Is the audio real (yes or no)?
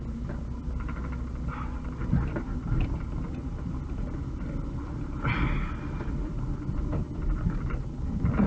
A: yes